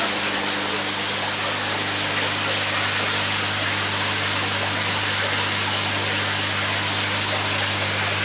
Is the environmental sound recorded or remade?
recorded